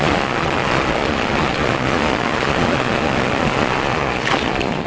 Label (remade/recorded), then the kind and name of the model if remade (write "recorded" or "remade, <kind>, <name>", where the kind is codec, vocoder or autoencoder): remade, vocoder, Vocos